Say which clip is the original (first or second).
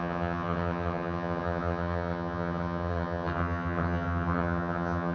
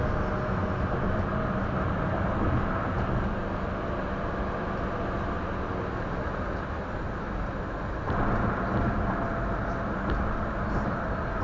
second